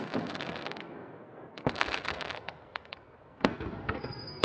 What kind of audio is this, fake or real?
fake